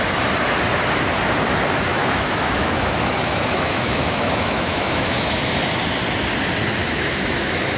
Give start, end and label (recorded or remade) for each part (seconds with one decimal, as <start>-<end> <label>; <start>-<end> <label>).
0.0-1.9 recorded; 1.9-5.4 remade; 5.4-6.8 recorded; 6.8-7.8 remade